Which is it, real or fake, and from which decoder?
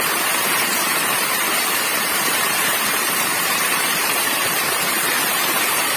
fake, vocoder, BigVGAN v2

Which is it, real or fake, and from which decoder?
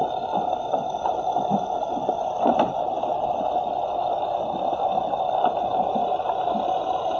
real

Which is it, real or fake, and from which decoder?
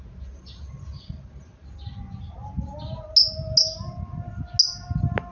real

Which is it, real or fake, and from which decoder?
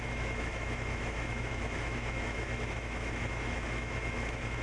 fake, autoencoder, DAC-VAE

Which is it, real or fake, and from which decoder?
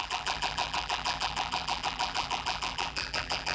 fake, vocoder, BigVGAN v2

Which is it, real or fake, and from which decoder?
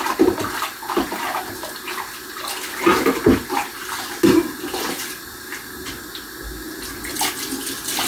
real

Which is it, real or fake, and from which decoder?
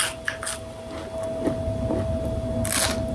real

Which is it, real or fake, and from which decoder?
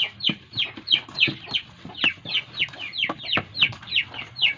real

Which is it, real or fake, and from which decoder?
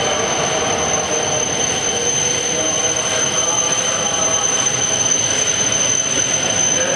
real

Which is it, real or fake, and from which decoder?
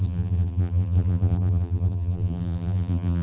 fake, vocoder, BigVGAN v2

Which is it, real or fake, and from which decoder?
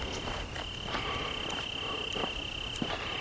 real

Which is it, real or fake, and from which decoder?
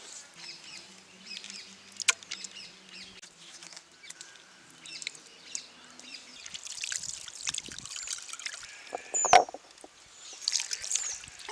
real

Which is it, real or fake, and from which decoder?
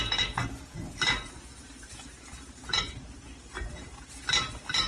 fake, vocoder, BigVGAN v2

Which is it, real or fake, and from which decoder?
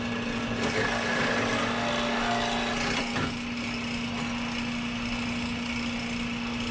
real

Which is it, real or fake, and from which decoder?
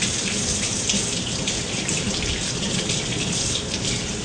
fake, vocoder, BigVGAN v2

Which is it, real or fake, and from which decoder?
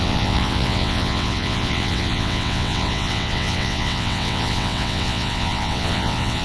fake, vocoder, WaveNeXt